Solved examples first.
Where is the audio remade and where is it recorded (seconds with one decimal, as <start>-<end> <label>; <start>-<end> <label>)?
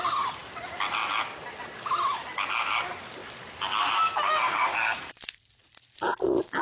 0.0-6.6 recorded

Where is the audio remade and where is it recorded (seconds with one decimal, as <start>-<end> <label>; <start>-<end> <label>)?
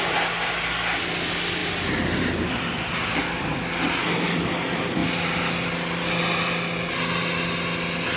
0.0-8.2 recorded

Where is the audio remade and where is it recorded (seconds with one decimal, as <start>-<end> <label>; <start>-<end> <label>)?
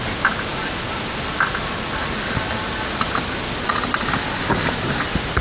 0.0-5.4 recorded